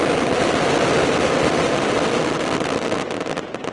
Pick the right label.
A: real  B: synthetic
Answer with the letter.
A